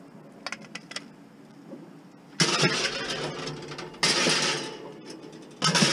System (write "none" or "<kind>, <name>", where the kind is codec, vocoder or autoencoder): none